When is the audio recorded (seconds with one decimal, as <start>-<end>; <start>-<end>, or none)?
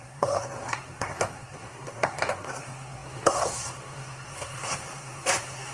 none